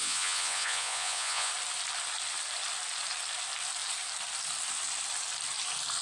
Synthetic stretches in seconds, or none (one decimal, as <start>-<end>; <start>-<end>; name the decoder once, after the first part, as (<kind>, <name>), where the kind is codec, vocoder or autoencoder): 0.0-1.5 (vocoder, Vocos)